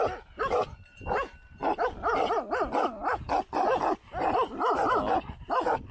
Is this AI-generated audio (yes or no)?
no